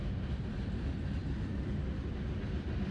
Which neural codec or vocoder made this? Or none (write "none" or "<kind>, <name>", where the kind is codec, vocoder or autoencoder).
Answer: none